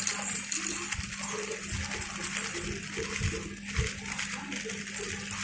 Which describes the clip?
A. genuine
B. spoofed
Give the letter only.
A